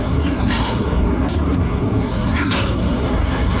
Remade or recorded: remade